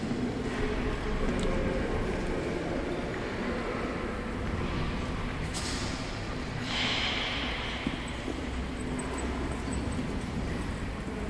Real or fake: real